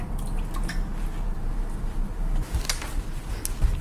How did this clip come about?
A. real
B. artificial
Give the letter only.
A